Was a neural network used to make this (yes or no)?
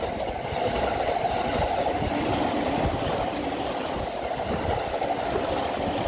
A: yes